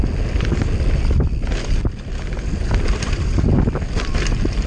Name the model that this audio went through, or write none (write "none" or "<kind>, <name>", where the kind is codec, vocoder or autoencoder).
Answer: none